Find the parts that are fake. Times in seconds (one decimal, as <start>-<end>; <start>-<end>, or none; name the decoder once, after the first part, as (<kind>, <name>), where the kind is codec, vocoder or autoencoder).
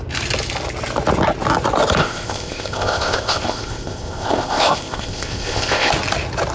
2.0-5.9 (codec, ZipCodec)